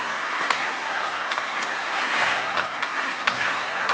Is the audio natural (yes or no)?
no